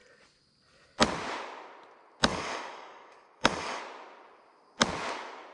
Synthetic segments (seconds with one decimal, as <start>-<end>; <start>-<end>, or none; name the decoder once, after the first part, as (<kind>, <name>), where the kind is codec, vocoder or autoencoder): 2.3-3.8 (codec, DAC)